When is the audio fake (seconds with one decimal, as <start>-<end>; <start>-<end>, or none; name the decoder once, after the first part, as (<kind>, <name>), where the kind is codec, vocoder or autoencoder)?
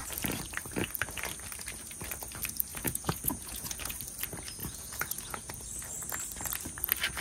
2.7-3.9 (vocoder, Vocos); 4.6-5.5